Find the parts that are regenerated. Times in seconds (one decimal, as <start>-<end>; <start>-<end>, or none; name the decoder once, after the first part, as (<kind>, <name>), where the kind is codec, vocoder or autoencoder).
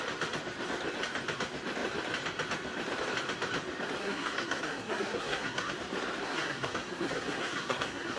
4.0-5.7 (codec, SNAC); 6.2-8.2